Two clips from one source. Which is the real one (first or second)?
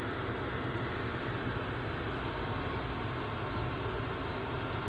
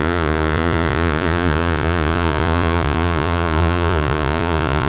first